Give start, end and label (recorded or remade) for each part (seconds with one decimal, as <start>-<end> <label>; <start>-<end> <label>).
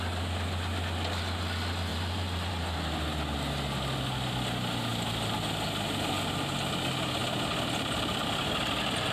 0.0-1.9 recorded; 1.9-2.5 remade; 2.5-9.1 recorded